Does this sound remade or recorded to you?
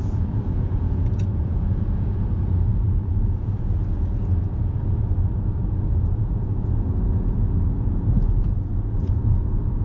remade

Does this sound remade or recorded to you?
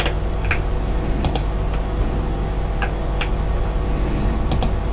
recorded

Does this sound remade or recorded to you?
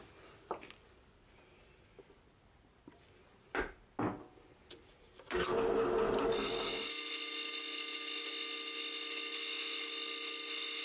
recorded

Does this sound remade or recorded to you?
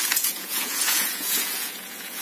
remade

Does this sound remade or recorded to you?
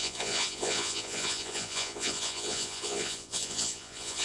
remade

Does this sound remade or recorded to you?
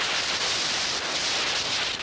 recorded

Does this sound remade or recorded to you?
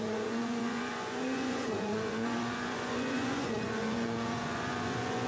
remade